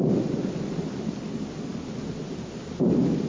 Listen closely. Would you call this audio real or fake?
real